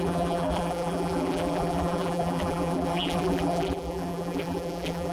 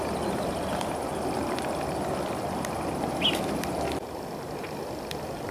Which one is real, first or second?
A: second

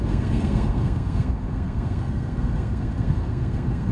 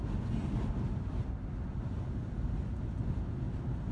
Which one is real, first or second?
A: second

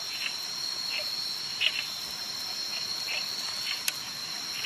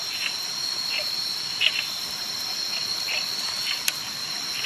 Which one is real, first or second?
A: first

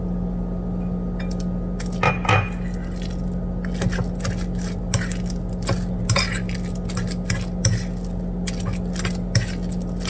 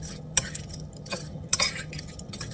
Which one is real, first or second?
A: first